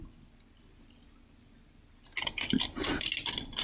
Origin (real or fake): real